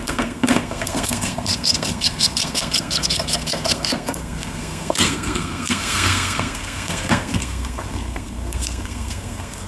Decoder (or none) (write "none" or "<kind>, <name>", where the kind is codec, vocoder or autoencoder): codec, SNAC